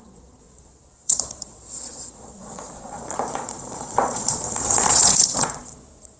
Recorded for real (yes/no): no